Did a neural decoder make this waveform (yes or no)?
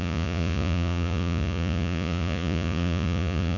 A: yes